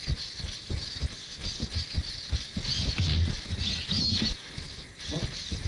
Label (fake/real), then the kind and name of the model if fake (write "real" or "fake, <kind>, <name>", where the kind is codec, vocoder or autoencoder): real